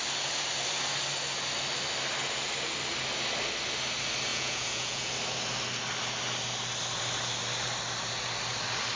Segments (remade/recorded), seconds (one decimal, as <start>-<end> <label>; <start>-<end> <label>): 0.0-4.3 recorded; 4.3-5.1 remade; 5.1-9.0 recorded